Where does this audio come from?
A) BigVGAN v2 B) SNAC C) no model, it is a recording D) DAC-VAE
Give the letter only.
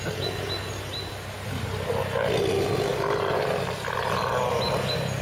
C